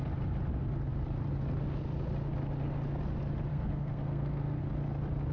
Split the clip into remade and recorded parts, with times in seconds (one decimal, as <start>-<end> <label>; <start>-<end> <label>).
0.0-3.5 recorded; 3.5-4.6 remade; 4.6-5.3 recorded